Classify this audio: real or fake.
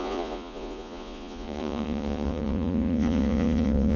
fake